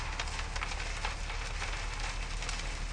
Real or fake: real